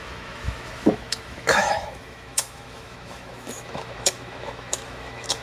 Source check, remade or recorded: remade